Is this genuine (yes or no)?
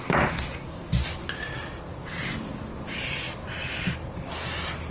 yes